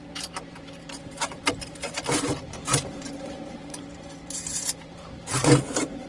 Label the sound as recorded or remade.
remade